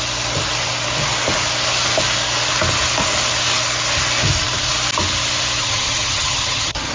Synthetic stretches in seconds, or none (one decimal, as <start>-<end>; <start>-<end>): 5.6-6.9